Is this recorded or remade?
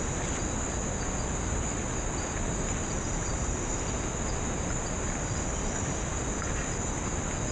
recorded